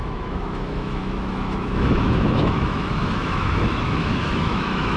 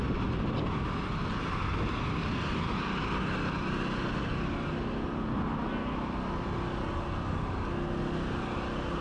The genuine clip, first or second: second